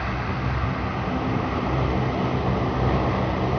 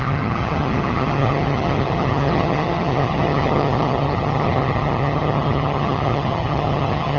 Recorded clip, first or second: first